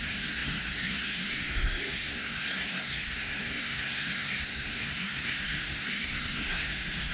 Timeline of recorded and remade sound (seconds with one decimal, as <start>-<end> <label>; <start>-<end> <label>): 0.0-7.1 remade